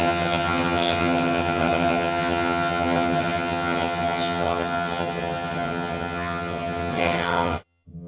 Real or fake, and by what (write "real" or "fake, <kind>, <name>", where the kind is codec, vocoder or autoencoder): fake, vocoder, HiFi-GAN